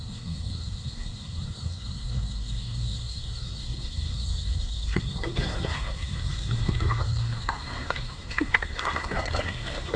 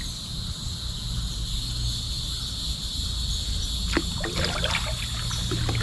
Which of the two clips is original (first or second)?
second